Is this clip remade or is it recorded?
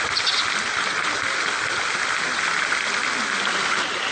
recorded